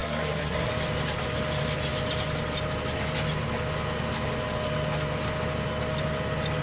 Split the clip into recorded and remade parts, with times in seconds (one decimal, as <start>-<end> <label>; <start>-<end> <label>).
0.0-0.7 remade; 0.7-6.6 recorded

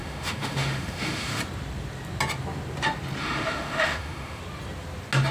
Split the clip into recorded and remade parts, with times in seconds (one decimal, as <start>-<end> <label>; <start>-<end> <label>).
0.0-1.4 remade; 1.4-3.2 recorded; 3.2-4.4 remade; 4.4-5.3 recorded

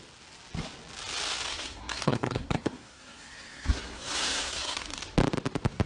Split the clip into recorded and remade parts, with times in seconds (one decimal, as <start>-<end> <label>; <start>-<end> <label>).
0.0-1.5 recorded; 1.5-5.0 remade; 5.0-5.9 recorded

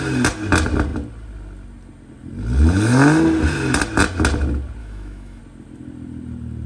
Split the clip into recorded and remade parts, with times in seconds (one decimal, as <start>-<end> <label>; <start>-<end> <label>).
0.0-4.8 recorded; 4.8-5.4 remade; 5.4-6.7 recorded